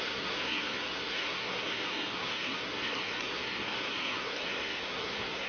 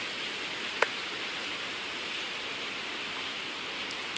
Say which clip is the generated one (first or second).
first